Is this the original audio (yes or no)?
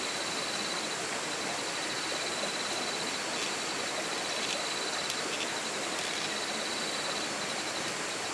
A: yes